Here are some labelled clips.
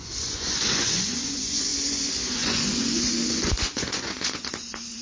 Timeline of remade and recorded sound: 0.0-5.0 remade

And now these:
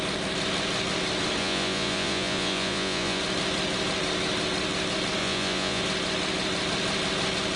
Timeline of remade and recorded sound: 0.0-1.4 recorded; 1.4-3.2 remade; 3.2-5.2 recorded; 5.2-5.8 remade; 5.8-7.6 recorded

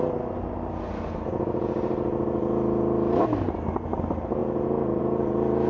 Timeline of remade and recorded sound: 0.0-5.7 recorded

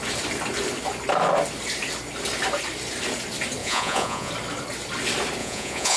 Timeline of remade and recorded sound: 0.0-3.6 recorded; 3.6-4.3 remade; 4.3-5.4 recorded; 5.4-6.0 remade